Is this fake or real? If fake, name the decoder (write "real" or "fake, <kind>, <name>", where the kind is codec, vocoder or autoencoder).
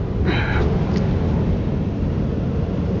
real